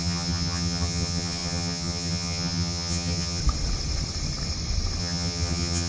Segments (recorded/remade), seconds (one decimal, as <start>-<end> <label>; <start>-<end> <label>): 0.0-3.4 remade; 3.4-5.0 recorded; 5.0-5.9 remade